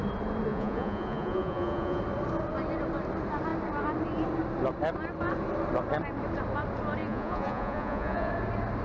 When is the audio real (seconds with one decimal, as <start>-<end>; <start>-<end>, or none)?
0.0-0.5; 2.0-7.0; 8.3-8.8